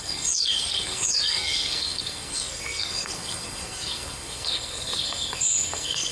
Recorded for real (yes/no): no